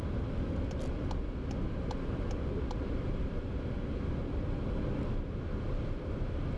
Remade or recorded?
recorded